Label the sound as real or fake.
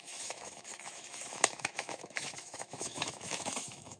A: fake